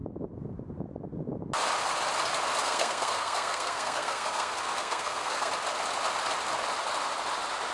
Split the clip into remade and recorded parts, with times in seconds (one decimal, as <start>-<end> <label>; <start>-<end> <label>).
0.0-2.6 recorded; 2.6-5.5 remade; 5.5-7.7 recorded